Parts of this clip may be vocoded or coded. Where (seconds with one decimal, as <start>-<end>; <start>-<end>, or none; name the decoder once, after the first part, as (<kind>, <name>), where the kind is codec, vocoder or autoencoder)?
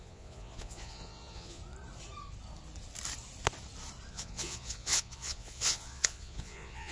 0.0-1.6 (vocoder, Vocos); 4.1-6.9